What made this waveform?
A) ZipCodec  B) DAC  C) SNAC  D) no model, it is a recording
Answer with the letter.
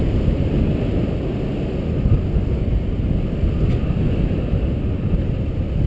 D